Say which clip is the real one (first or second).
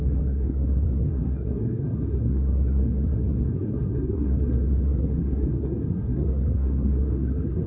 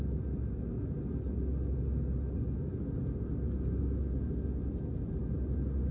second